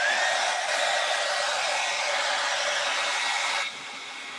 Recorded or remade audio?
recorded